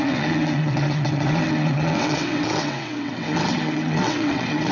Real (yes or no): no